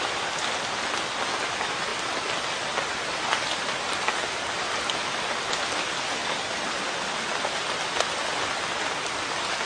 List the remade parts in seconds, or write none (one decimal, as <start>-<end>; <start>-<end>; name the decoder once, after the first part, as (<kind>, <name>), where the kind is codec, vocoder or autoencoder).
none